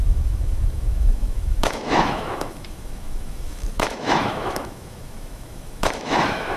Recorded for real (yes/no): no